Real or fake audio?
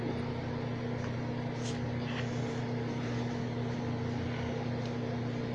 real